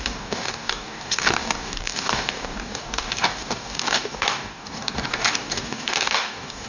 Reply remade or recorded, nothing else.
remade